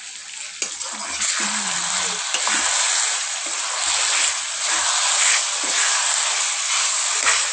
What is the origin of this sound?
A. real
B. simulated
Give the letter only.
A